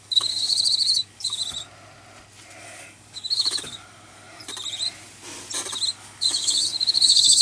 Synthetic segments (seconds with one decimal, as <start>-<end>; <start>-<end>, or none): 0.0-1.4; 2.6-4.4; 5.9-7.4